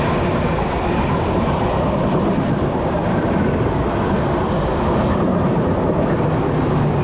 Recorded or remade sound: recorded